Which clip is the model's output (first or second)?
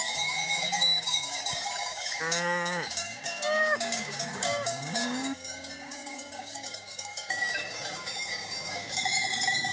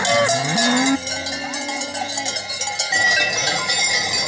first